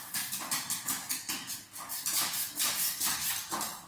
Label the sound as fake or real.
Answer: real